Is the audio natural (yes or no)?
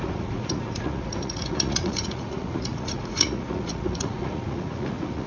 no